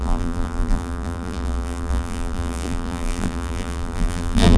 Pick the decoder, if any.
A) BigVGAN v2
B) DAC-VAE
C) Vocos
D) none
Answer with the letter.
A